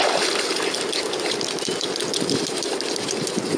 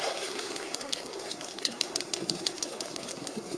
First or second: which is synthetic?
second